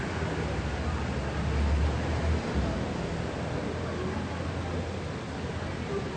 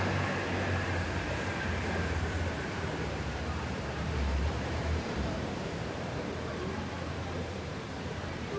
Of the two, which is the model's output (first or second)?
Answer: second